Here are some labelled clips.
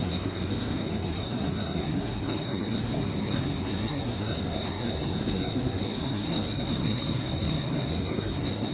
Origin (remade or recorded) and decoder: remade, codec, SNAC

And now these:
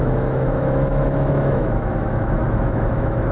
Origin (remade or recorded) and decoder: remade, autoencoder, DAC-VAE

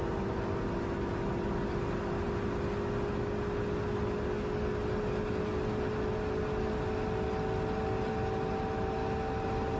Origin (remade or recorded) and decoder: recorded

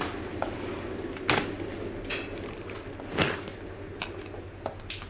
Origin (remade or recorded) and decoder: recorded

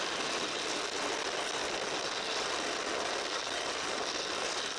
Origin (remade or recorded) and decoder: recorded